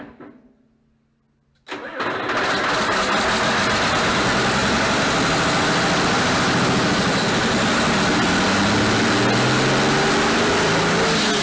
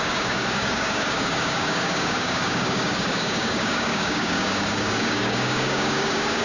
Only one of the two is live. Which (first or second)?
first